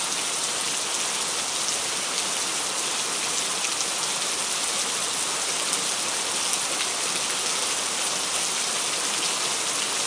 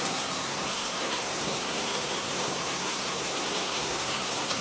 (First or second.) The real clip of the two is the first